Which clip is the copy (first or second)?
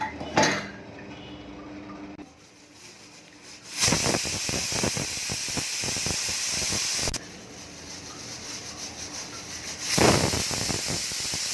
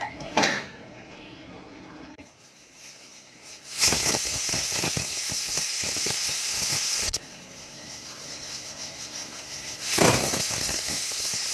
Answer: second